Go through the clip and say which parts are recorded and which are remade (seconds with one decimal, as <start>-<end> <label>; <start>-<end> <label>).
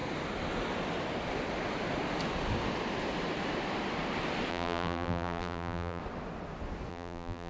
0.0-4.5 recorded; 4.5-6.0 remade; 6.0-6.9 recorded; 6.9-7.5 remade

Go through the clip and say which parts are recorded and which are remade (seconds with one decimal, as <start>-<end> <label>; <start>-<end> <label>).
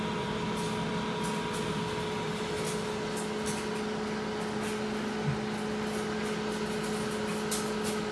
0.0-8.1 recorded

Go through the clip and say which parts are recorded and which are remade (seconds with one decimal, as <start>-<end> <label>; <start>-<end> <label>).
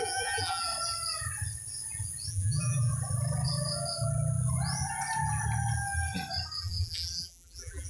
0.0-0.7 remade; 0.7-2.3 recorded; 2.3-2.9 remade; 2.9-6.6 recorded; 6.6-7.9 remade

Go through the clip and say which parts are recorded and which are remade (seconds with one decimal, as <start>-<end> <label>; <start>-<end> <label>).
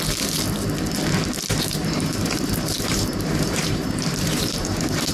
0.0-1.8 recorded; 1.8-5.1 remade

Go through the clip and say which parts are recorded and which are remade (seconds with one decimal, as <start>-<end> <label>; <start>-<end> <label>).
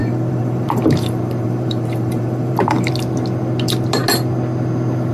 0.0-2.9 remade; 2.9-5.1 recorded